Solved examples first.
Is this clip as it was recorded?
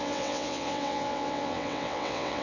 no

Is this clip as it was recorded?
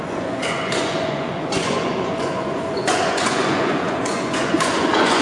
no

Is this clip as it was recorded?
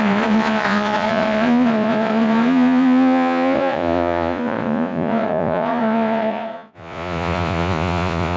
no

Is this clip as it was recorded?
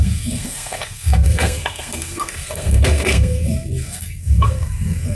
no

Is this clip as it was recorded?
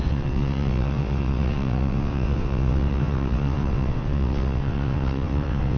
no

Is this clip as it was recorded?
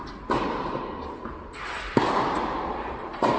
no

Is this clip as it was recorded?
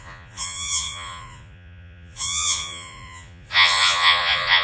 no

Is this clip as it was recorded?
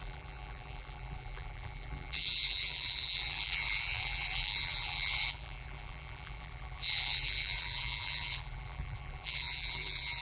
no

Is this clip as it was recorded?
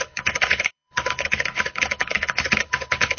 no